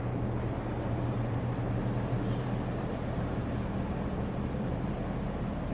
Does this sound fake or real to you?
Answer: fake